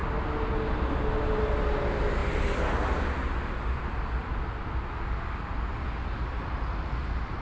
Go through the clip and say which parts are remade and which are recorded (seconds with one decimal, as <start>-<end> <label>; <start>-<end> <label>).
0.0-7.4 recorded